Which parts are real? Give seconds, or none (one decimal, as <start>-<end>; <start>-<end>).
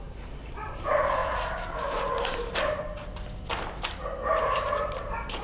none